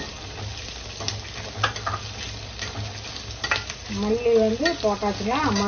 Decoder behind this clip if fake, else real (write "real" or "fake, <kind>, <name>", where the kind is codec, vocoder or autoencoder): real